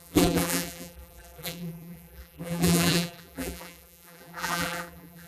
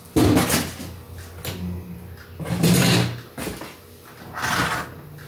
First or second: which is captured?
second